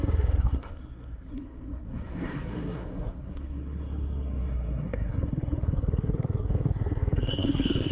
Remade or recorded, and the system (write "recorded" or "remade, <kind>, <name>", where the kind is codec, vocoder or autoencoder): remade, codec, SNAC